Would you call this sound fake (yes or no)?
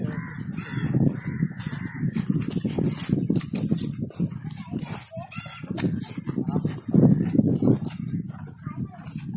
no